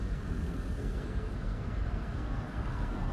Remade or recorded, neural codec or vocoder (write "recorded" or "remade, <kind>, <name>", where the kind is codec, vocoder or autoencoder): remade, codec, SNAC